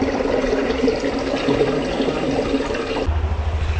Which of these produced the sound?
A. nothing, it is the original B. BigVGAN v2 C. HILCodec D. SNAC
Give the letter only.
A